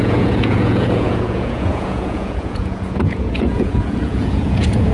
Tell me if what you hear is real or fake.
fake